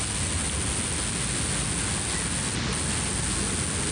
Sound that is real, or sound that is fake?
real